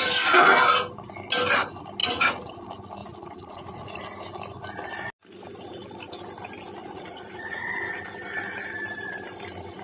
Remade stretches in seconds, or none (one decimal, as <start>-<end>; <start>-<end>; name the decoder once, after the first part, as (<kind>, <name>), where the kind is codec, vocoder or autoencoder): 2.0-2.5 (vocoder, Vocos); 3.0-4.0; 6.8-7.7